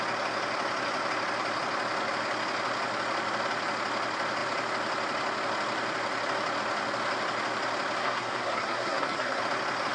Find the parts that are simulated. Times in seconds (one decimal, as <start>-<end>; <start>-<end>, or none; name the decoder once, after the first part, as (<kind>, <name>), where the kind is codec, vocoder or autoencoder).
8.0-9.4 (codec, SNAC)